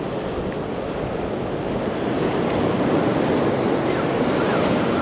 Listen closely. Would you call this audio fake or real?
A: real